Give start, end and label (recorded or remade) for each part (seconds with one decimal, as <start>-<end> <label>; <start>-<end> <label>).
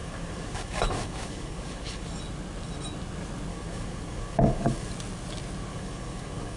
0.0-2.0 remade; 2.0-3.5 recorded; 3.5-4.9 remade; 4.9-5.7 recorded; 5.7-6.6 remade